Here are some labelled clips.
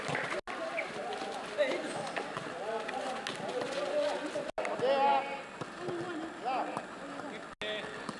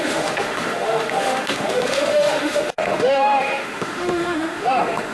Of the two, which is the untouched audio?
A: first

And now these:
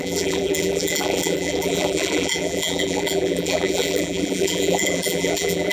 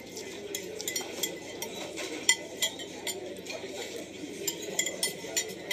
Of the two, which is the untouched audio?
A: second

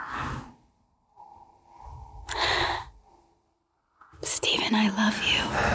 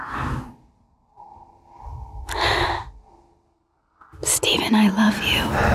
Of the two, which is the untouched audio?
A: second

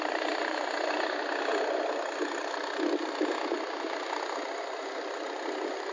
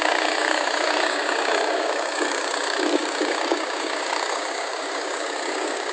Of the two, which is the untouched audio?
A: first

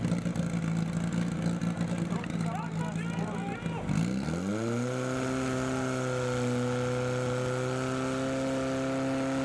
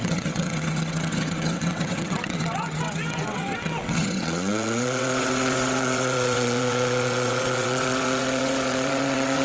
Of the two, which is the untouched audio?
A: first